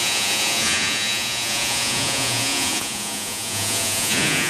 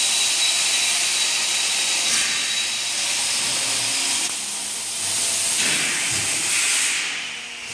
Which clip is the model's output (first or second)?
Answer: first